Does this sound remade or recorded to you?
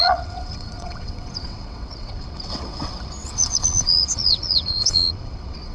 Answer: remade